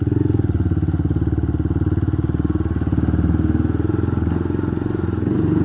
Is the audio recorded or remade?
recorded